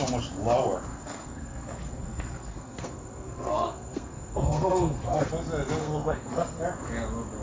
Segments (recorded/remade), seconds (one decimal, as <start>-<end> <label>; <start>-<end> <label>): 0.0-0.9 recorded; 0.9-5.3 remade; 5.3-5.8 recorded; 5.8-6.6 remade; 6.6-7.4 recorded